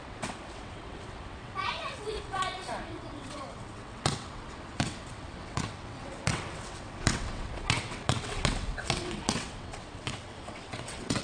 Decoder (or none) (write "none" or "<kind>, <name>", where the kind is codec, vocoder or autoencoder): vocoder, WaveNeXt